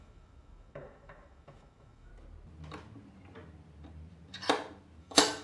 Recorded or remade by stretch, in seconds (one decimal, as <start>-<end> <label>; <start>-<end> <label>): 0.0-2.1 remade; 2.1-5.0 recorded; 5.0-5.4 remade